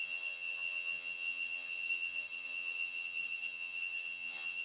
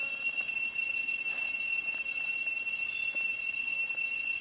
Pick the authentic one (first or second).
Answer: second